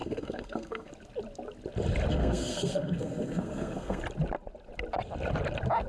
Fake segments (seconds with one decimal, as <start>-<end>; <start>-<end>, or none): 0.0-0.9; 2.1-4.0